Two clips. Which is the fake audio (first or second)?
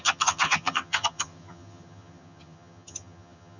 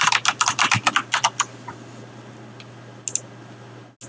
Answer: first